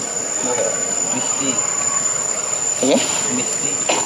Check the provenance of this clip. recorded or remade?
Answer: recorded